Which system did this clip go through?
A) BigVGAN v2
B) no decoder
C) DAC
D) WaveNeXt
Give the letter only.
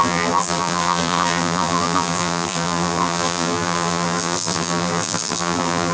A